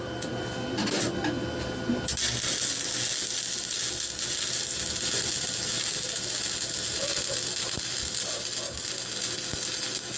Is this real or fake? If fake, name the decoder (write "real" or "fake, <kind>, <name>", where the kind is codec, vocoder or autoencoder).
real